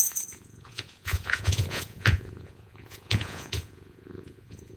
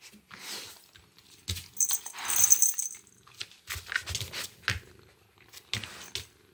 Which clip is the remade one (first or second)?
first